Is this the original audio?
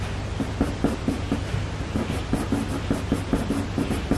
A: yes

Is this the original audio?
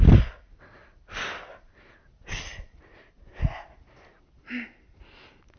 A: yes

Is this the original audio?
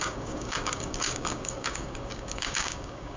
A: no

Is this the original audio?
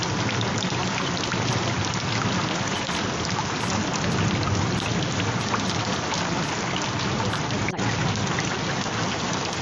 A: yes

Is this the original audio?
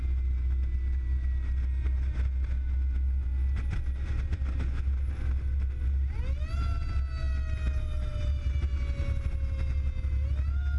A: yes